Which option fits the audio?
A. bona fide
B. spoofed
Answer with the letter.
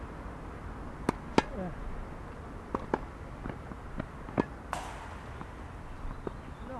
A